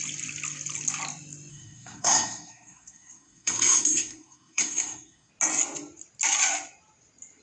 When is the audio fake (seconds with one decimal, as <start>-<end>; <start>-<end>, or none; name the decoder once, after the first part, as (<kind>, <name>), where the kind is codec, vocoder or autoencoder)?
1.5-5.3 (codec, SNAC)